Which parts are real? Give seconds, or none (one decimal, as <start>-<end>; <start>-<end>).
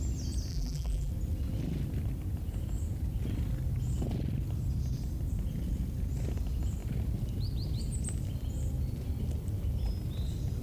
0.0-0.5; 1.1-10.6